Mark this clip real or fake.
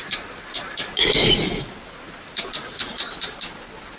real